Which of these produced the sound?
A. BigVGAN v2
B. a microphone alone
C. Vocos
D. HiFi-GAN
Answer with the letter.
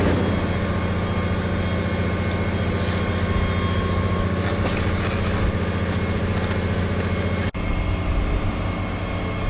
B